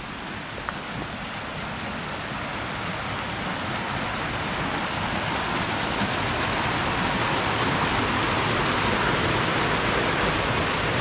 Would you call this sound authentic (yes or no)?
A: yes